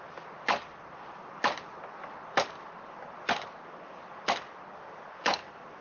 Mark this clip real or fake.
real